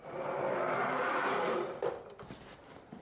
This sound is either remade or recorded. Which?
recorded